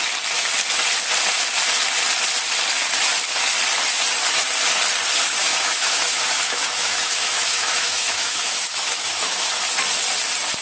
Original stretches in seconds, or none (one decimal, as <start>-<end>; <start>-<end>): 0.0-5.4; 9.5-10.6